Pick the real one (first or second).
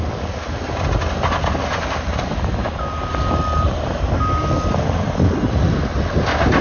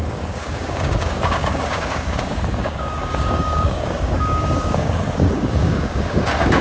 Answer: first